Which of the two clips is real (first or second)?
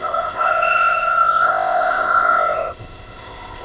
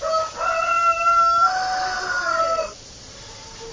second